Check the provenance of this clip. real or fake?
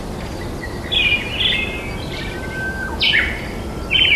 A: real